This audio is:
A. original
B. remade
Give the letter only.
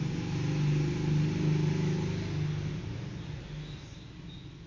A